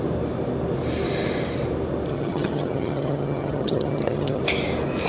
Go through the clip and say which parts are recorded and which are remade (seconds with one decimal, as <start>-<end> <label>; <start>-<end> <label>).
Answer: 0.0-2.1 recorded; 2.1-4.4 remade; 4.4-5.1 recorded